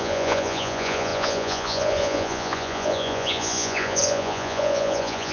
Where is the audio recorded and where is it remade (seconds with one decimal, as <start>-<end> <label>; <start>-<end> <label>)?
0.0-5.3 remade